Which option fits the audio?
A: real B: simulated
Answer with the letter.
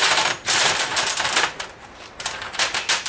B